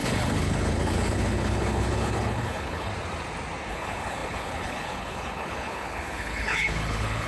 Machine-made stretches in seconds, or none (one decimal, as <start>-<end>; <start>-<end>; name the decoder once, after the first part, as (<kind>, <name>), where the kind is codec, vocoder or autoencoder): 0.0-2.9 (codec, HILCodec); 3.7-7.3